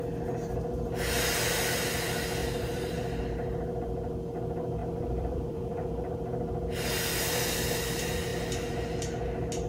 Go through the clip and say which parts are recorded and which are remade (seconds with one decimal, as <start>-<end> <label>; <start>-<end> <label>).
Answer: 0.0-2.4 recorded; 2.4-3.2 remade; 3.2-4.8 recorded; 4.8-5.9 remade; 5.9-9.7 recorded